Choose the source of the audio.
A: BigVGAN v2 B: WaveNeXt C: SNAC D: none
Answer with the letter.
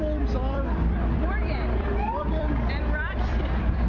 A